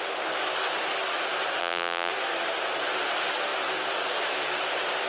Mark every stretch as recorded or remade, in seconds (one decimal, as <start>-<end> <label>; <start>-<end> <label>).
0.0-1.6 recorded; 1.6-2.1 remade; 2.1-5.1 recorded